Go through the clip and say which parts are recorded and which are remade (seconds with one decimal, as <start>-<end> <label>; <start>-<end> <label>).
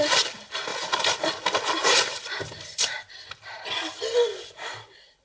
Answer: 0.0-5.2 recorded